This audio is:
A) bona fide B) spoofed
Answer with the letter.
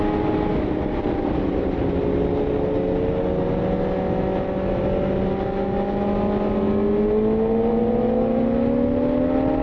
A